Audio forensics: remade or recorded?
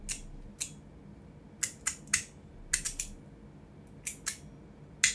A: recorded